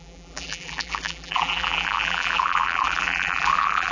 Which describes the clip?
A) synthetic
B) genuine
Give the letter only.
A